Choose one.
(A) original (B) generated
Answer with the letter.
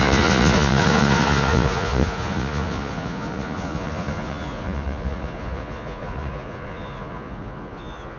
B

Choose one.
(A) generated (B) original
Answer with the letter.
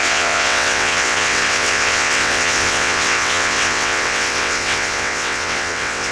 A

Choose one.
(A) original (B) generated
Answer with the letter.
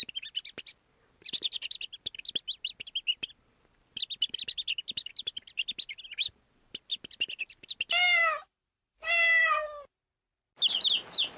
A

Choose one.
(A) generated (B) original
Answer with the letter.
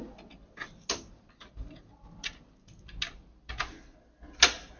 B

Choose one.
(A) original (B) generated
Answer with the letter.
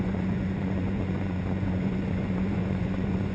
B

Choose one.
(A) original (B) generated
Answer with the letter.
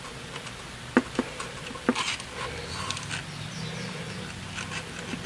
A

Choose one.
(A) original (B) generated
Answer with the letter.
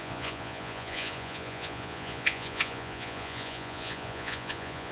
B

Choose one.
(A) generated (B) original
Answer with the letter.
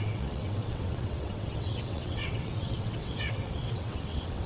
A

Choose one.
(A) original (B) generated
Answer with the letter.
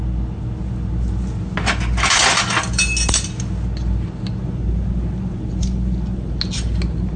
A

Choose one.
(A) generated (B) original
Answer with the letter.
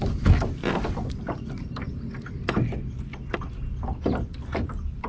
B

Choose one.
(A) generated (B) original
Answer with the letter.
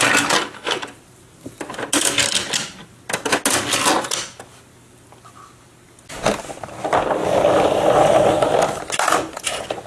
B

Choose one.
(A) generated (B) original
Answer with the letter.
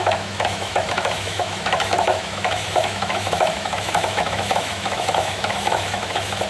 A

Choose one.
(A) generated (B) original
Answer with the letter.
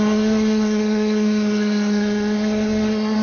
A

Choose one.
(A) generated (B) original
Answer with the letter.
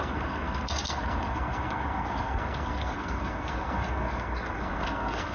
A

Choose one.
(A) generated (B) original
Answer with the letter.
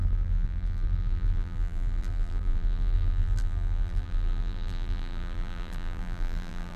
A